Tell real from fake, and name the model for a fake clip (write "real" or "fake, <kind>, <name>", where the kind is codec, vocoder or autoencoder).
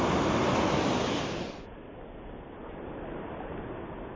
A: real